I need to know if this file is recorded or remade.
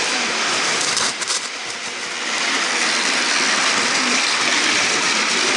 remade